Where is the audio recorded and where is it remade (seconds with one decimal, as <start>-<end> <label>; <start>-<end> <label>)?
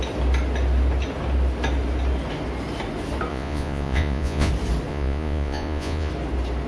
0.0-3.3 recorded; 3.3-4.5 remade; 4.5-4.9 recorded; 4.9-6.1 remade; 6.1-6.7 recorded